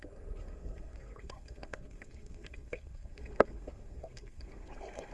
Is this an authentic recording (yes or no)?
no